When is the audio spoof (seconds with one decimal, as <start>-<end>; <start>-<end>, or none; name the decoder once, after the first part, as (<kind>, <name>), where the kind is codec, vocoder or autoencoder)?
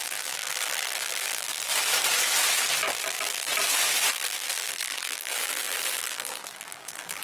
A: 0.0-1.7 (vocoder, BigVGAN v2); 2.8-3.5; 4.1-7.2